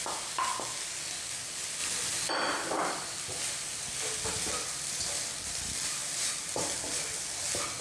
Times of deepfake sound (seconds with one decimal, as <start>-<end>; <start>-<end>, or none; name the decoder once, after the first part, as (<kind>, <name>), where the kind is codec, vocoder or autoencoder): 0.0-0.5 (vocoder, BigVGAN v2); 1.1-1.8; 2.3-7.8